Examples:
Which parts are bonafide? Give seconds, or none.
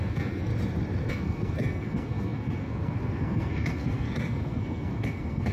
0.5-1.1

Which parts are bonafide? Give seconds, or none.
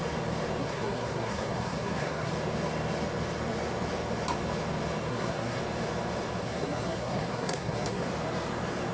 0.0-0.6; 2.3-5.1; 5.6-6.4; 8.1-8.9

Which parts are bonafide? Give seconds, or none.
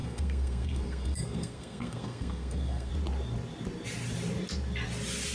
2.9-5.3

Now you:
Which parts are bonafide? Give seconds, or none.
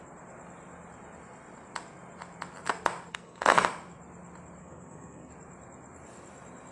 0.0-3.1; 3.6-4.6; 5.3-6.7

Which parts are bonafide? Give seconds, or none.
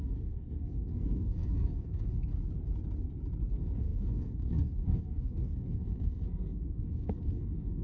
2.3-3.5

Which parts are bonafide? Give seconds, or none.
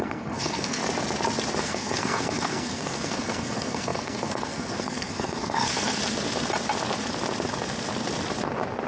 0.8-1.6; 6.0-8.9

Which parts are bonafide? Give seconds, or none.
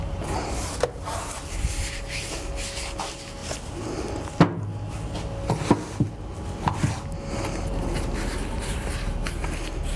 0.0-10.0